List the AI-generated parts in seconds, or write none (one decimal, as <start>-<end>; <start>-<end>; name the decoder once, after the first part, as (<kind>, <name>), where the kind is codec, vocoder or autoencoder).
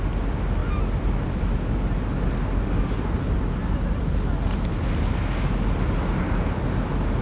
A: none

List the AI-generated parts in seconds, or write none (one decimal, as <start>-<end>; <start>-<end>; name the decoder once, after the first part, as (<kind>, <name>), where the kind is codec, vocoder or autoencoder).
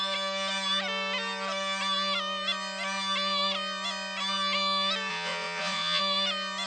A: 5.1-6.0 (vocoder, Vocos)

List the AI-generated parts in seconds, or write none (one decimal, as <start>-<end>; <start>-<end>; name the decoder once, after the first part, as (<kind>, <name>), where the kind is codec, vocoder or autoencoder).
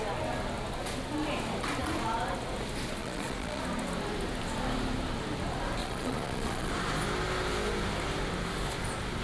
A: 3.0-3.6 (vocoder, Vocos); 5.8-6.7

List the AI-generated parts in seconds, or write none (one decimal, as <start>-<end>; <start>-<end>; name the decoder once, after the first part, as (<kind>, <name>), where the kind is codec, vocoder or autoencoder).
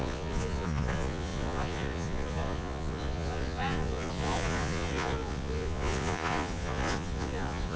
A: 0.0-7.8 (vocoder, Vocos)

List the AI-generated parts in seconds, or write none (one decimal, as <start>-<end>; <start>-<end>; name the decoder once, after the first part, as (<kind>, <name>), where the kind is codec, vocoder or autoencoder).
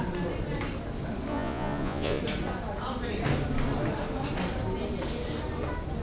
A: 1.3-2.2 (vocoder, Vocos)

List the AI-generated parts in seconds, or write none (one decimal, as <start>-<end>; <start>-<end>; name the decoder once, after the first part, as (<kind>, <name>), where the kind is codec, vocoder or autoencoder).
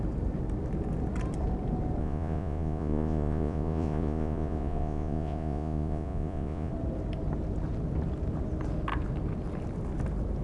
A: 2.0-6.7 (vocoder, Vocos)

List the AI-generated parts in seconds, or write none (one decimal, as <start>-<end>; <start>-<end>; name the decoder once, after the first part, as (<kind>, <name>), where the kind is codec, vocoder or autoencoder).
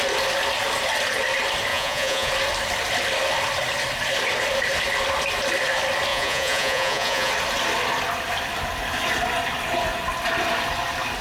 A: 1.7-2.3 (vocoder, Vocos); 6.1-7.3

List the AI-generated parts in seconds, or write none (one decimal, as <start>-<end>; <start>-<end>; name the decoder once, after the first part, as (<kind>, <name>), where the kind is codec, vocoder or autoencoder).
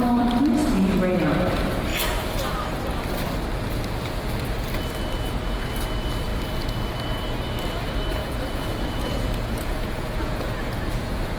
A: 8.2-11.4 (vocoder, Vocos)